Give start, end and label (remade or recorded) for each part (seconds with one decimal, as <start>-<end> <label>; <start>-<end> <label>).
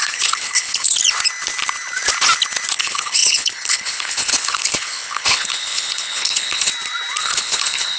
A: 0.0-1.0 remade; 1.0-2.7 recorded; 2.7-6.7 remade; 6.7-7.2 recorded; 7.2-8.0 remade